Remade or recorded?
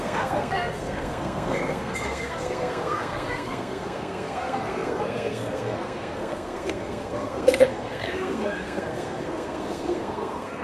remade